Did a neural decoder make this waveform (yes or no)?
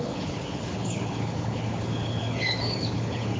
yes